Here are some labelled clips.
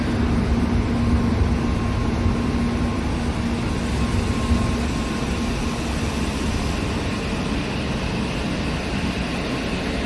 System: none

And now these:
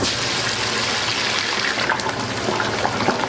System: none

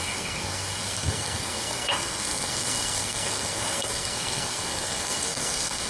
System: codec, SNAC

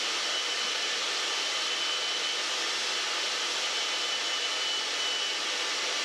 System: none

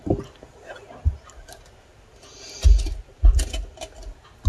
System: none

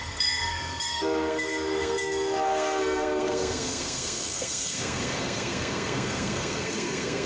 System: codec, SNAC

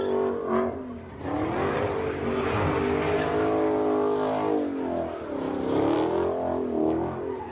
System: none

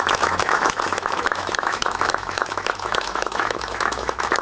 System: autoencoder, DAC-VAE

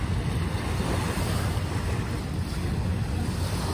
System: none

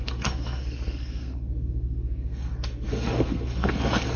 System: codec, SNAC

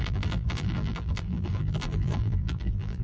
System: vocoder, BigVGAN v2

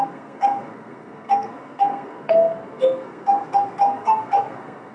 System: codec, SNAC